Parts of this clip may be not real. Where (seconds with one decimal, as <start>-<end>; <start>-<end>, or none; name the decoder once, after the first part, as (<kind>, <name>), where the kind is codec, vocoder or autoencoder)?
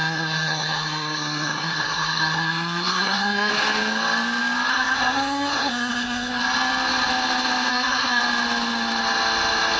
0.0-3.5 (codec, SNAC); 4.7-6.4; 7.7-8.2